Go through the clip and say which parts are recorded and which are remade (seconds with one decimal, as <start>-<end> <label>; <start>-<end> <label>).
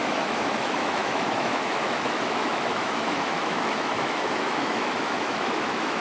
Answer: 0.0-6.0 remade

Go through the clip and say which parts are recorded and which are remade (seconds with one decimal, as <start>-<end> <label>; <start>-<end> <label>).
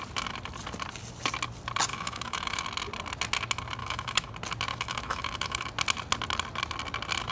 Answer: 0.0-1.9 recorded; 1.9-2.6 remade; 2.6-3.8 recorded; 3.8-4.3 remade; 4.3-4.7 recorded; 4.7-5.7 remade; 5.7-7.3 recorded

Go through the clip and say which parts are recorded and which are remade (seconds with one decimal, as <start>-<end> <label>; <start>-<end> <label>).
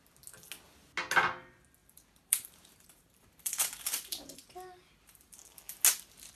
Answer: 0.0-1.8 recorded; 1.8-5.6 remade; 5.6-6.4 recorded